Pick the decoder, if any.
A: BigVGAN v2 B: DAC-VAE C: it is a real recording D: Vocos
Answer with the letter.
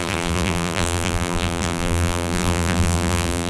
A